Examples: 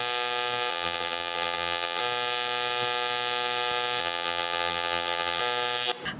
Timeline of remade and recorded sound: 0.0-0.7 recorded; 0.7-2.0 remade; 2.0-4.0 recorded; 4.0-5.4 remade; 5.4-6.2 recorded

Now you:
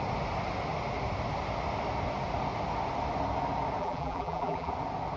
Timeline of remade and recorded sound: 0.0-3.8 recorded; 3.8-4.7 remade; 4.7-5.2 recorded